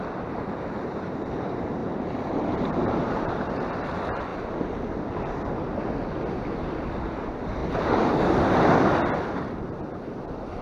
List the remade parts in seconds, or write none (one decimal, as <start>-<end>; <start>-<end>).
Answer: 0.0-1.8; 2.3-4.3; 6.4-7.6; 9.6-10.6